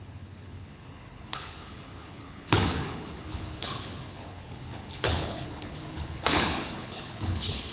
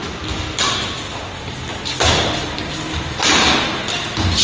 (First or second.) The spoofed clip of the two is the first